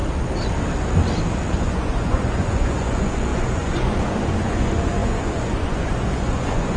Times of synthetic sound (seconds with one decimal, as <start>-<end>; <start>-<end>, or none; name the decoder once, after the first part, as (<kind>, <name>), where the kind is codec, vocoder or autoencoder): 1.6-6.8 (vocoder, Vocos)